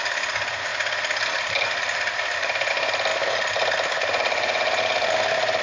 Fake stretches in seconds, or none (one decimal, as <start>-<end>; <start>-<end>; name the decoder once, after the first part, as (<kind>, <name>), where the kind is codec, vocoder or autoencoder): none